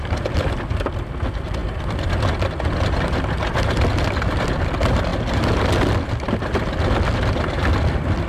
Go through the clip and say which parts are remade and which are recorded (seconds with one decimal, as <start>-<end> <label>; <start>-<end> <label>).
0.0-8.3 recorded